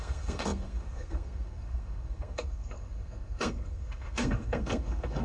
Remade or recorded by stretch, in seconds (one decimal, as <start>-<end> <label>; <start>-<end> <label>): 0.0-5.2 remade